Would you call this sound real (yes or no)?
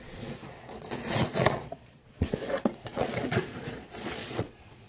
no